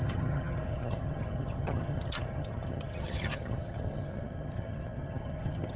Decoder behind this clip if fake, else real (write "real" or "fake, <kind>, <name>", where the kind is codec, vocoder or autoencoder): fake, vocoder, HiFi-GAN